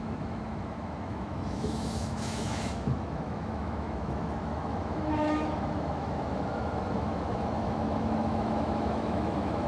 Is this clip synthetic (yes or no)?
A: yes